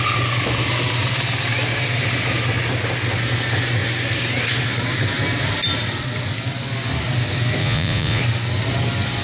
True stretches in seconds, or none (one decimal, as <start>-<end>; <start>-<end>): 0.0-7.6; 8.2-9.2